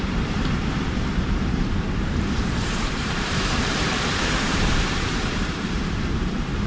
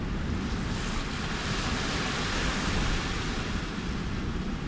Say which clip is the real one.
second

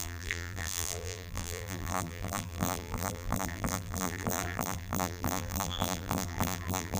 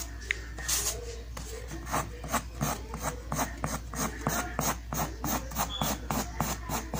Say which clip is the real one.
second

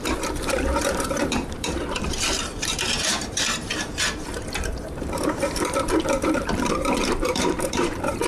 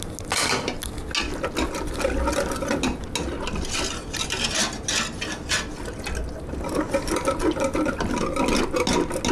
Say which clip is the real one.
second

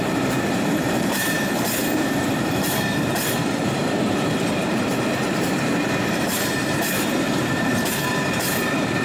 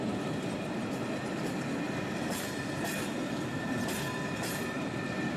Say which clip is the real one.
second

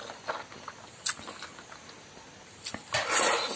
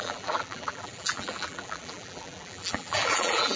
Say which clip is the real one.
first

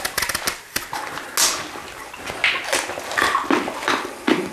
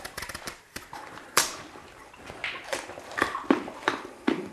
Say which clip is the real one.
first